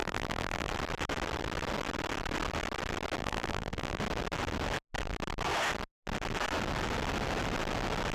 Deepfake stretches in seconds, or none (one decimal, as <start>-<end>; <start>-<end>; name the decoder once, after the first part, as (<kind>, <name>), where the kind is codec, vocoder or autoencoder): 0.0-0.7 (vocoder, BigVGAN v2); 3.2-4.0